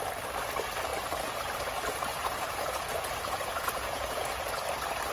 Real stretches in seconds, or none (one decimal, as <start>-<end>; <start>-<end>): 0.0-2.1; 4.4-5.1